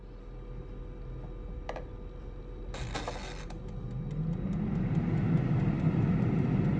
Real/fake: real